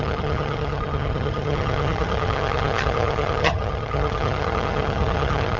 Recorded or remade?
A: remade